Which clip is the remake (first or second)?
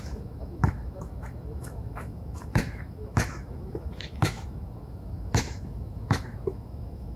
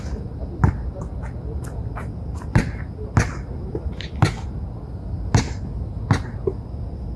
first